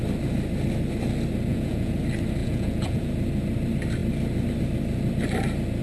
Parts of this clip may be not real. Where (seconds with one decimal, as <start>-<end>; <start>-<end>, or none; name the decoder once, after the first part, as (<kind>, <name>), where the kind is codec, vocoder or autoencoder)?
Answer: 1.5-2.0 (vocoder, Vocos); 2.4-3.1